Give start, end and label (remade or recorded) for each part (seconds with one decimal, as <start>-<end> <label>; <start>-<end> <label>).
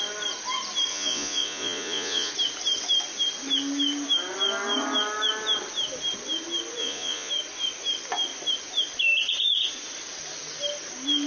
0.0-0.9 recorded; 0.9-2.3 remade; 2.3-6.8 recorded; 6.8-7.3 remade; 7.3-11.3 recorded